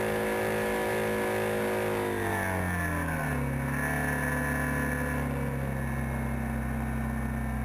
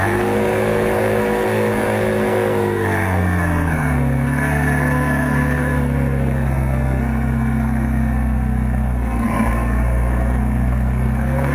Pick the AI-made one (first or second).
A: second